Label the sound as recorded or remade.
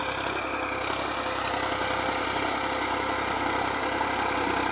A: recorded